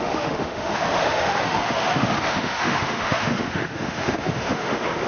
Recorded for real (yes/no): no